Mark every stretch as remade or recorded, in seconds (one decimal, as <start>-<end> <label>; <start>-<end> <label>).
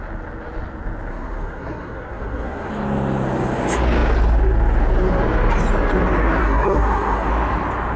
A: 0.0-1.1 recorded; 1.1-2.7 remade; 2.7-6.4 recorded; 6.4-7.3 remade; 7.3-8.0 recorded